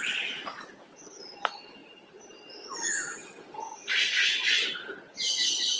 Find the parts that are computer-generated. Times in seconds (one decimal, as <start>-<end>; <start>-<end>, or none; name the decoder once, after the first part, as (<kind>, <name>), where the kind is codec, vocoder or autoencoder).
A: none